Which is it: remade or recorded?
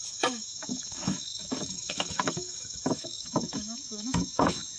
remade